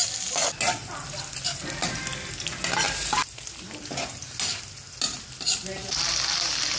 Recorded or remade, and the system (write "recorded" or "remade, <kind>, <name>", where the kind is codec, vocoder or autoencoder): recorded